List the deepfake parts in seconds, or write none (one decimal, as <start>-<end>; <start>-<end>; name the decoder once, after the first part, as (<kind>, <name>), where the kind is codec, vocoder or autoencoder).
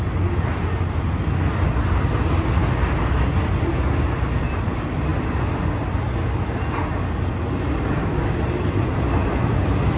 none